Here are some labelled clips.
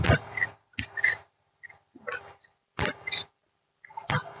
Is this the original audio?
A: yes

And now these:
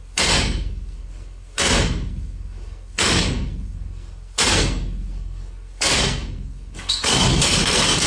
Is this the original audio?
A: no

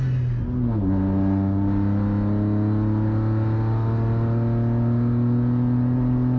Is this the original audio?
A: yes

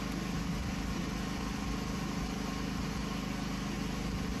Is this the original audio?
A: yes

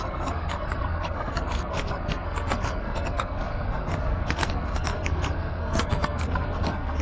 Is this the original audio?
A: no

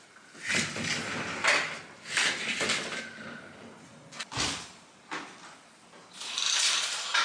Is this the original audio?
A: yes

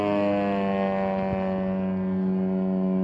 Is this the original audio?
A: yes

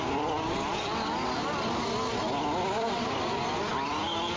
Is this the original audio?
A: yes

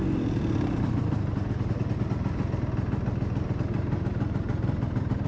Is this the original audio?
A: yes